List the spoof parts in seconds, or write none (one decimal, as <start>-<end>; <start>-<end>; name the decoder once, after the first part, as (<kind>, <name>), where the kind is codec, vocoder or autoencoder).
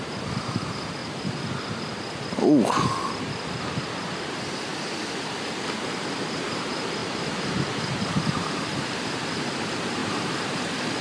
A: 0.0-1.0 (vocoder, BigVGAN v2); 4.0-4.7; 6.4-11.0